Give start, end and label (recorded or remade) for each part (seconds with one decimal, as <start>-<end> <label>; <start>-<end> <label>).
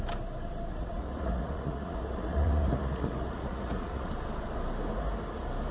0.0-0.7 recorded; 0.7-4.1 remade; 4.1-5.7 recorded